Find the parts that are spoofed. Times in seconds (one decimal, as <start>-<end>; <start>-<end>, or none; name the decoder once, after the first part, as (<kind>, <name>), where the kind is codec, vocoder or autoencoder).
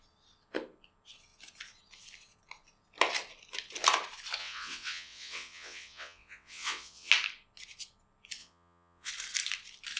4.4-7.1 (vocoder, WaveNeXt); 8.4-9.1